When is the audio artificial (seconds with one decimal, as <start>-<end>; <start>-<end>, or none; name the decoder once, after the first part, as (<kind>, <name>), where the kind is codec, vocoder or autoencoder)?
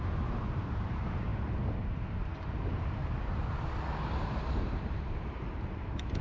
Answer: 0.0-1.3 (vocoder, BigVGAN v2); 2.0-3.0; 4.0-6.2